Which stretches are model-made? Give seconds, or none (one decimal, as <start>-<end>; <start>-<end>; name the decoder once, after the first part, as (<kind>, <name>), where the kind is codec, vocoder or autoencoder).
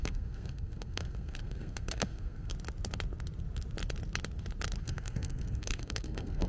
0.0-2.5 (codec, SNAC); 4.8-6.5